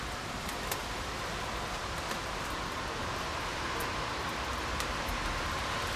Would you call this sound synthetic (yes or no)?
no